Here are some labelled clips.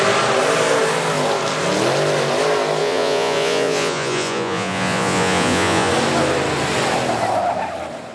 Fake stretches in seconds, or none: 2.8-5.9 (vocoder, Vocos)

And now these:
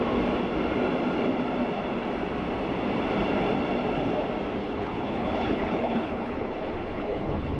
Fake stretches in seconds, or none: 4.6-7.6 (codec, HILCodec)